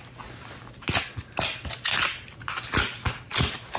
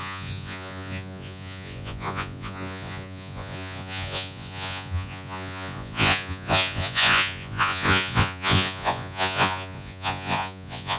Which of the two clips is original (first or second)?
first